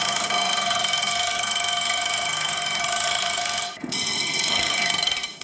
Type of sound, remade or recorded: remade